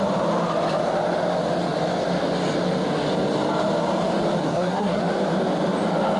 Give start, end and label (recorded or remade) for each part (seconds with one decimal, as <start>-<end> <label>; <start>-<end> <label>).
0.0-4.4 recorded; 4.4-5.0 remade; 5.0-6.2 recorded